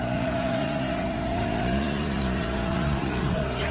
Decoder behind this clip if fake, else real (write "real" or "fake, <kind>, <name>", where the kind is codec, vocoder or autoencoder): fake, vocoder, Vocos